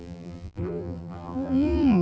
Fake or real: fake